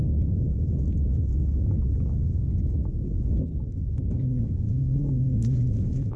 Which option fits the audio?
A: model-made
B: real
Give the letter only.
A